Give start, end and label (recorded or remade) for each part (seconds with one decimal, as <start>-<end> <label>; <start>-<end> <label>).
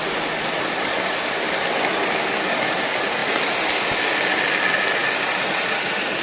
0.0-5.0 recorded; 5.0-6.2 remade